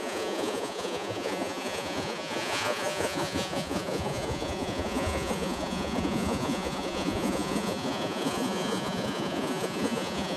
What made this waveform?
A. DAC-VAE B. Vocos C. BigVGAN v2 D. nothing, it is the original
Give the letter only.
B